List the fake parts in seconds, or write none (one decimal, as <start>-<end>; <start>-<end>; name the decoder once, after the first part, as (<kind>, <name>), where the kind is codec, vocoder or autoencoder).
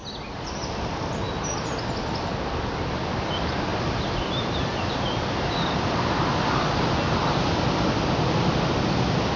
0.0-1.0 (vocoder, BigVGAN v2); 3.7-6.3